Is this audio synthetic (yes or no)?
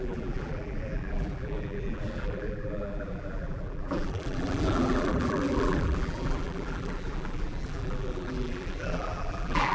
yes